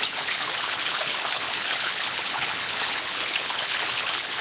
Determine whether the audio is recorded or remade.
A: remade